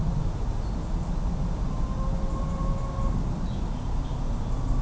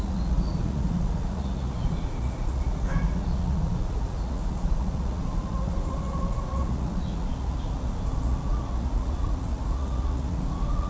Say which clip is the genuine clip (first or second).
first